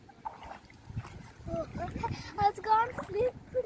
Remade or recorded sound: recorded